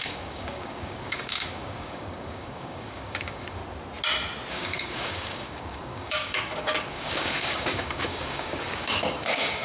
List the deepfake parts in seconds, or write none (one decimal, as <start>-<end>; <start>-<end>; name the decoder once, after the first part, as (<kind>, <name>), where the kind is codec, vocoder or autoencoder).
0.0-3.6 (codec, DAC); 4.5-9.6